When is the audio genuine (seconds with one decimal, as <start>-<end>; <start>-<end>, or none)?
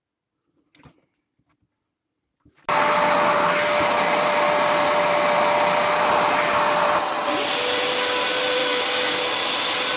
0.0-8.6; 9.2-10.0